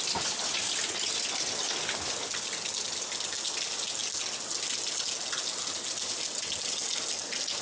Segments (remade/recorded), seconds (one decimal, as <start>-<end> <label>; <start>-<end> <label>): 0.0-7.6 recorded